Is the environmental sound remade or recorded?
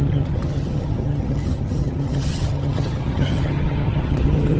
remade